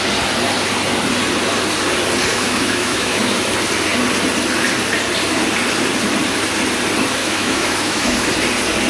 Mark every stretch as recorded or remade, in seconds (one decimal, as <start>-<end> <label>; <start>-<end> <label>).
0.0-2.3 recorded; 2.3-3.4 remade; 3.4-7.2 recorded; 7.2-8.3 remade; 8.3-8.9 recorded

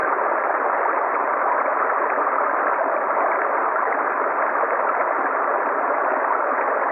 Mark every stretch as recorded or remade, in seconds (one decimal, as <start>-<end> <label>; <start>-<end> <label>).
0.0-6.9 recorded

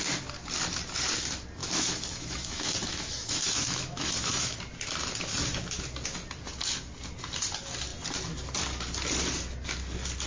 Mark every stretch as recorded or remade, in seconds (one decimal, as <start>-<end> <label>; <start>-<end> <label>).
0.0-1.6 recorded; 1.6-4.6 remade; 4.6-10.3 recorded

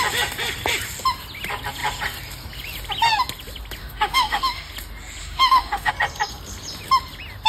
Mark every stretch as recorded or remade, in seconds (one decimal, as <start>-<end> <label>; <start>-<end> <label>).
0.0-3.8 recorded; 3.8-4.7 remade; 4.7-5.2 recorded; 5.2-5.9 remade; 5.9-7.5 recorded

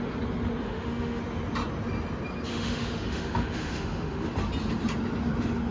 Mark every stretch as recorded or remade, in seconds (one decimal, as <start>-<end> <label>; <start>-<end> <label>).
0.0-0.6 recorded; 0.6-1.2 remade; 1.2-2.5 recorded; 2.5-4.3 remade; 4.3-5.7 recorded

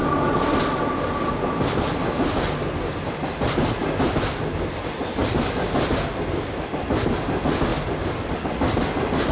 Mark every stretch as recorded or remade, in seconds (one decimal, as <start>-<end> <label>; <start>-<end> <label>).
0.0-9.3 recorded